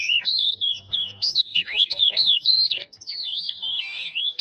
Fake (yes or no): yes